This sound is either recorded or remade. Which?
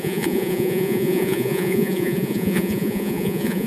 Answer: remade